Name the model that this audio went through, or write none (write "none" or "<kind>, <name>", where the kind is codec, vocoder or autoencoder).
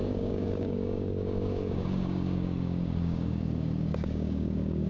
codec, DAC